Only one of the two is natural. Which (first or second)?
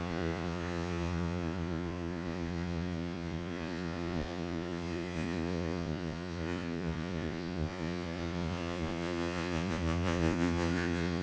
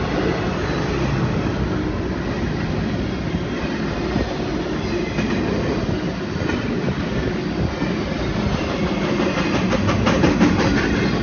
second